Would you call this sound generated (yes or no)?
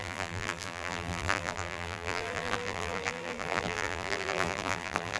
yes